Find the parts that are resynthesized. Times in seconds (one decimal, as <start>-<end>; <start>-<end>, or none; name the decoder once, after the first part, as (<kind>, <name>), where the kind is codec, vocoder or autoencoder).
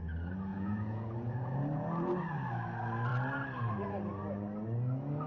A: 0.5-1.5 (vocoder, Vocos)